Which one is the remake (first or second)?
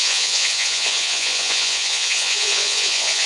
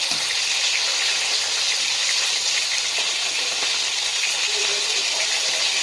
first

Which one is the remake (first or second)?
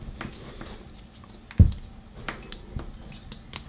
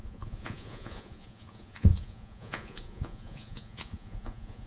second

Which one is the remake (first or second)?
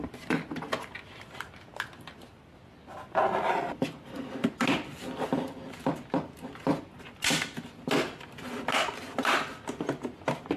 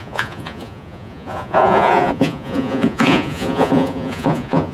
second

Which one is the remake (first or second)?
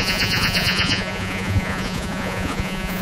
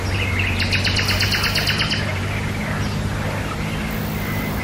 first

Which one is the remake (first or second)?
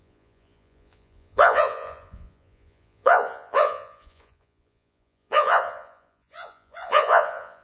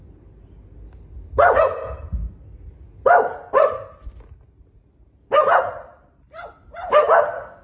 first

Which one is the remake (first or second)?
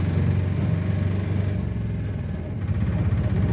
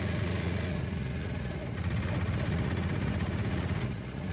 second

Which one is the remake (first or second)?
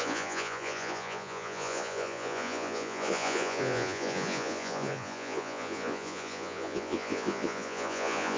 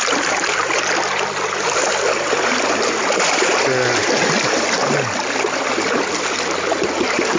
first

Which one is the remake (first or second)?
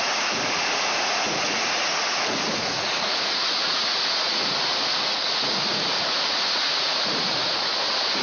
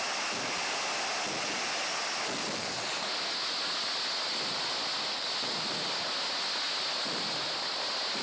first